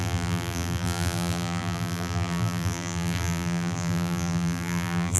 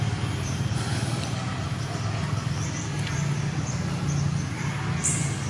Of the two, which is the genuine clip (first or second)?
second